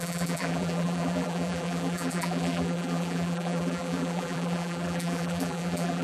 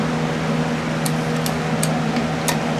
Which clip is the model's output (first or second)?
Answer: first